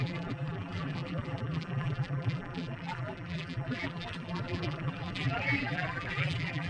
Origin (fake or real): fake